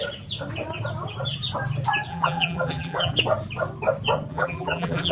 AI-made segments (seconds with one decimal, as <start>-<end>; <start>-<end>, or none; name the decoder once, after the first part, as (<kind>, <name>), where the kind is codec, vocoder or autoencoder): 2.1-3.1 (vocoder, BigVGAN v2); 4.3-5.1